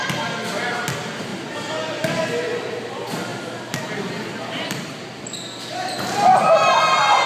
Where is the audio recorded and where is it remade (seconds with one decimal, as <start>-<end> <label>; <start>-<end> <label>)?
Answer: 0.0-7.3 recorded